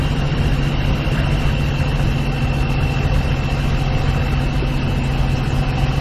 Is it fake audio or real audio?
real